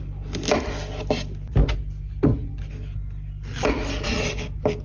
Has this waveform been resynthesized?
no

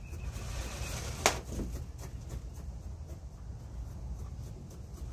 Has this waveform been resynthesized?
no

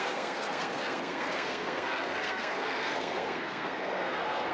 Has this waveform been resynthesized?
yes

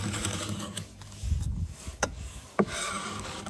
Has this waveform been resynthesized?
yes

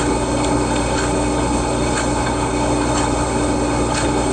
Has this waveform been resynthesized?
yes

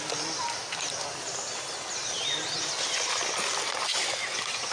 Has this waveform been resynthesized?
no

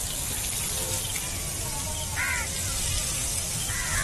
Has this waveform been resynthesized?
no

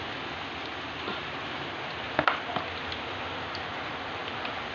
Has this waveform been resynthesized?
no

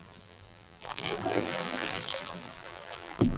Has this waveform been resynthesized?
yes